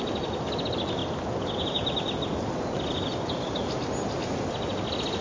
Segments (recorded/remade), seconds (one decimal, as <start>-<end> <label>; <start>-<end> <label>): 0.0-5.2 recorded